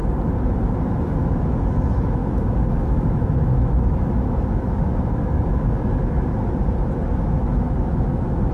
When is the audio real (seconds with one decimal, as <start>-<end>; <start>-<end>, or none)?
0.0-0.6; 6.3-7.2